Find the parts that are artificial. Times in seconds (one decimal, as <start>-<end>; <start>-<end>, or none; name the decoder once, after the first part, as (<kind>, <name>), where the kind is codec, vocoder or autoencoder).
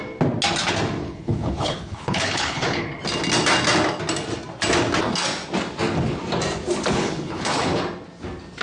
1.0-2.9 (codec, HILCodec); 6.9-7.8